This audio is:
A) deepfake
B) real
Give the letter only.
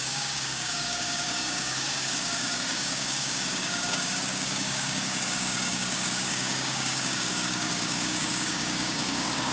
A